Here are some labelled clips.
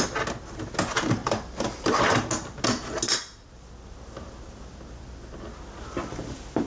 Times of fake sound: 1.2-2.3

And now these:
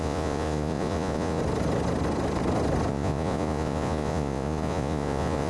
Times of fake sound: 0.0-1.4; 2.9-5.5